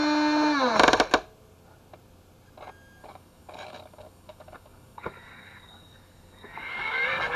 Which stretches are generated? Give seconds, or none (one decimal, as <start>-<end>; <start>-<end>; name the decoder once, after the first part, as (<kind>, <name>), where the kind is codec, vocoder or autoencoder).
3.0-7.4 (codec, DAC)